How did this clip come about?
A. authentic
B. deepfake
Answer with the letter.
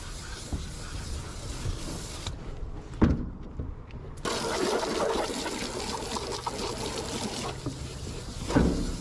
A